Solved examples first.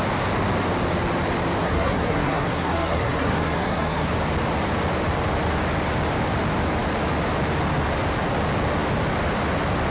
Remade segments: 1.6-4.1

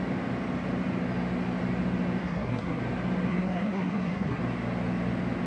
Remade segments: 2.2-2.8; 3.3-4.4

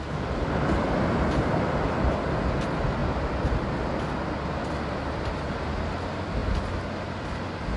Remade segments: none

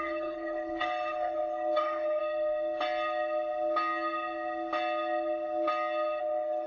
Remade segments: 0.0-2.2; 6.2-6.7

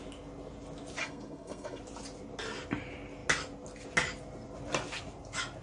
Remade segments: 1.0-1.8

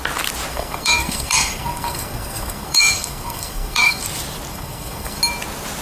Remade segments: 0.5-4.0; 4.5-5.2